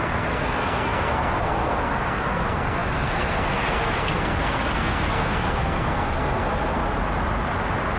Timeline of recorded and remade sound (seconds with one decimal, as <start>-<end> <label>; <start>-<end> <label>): 0.0-6.8 remade; 6.8-8.0 recorded